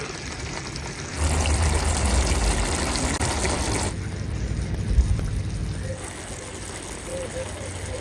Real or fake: real